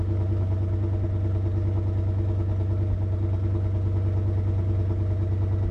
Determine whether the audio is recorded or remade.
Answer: recorded